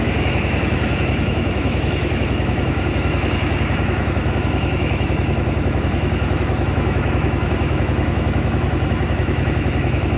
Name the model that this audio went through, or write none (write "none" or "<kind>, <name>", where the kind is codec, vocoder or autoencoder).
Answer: autoencoder, DAC-VAE